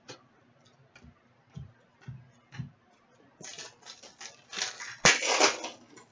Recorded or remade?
recorded